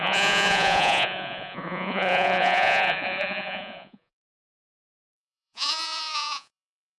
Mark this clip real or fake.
fake